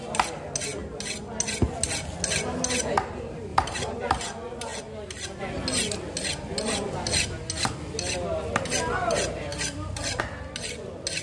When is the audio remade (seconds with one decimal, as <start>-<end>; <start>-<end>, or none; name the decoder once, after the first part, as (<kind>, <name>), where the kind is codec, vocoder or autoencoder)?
3.5-4.1 (vocoder, BigVGAN v2)